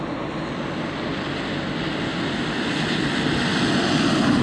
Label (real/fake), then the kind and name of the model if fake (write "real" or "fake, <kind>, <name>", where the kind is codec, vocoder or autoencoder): real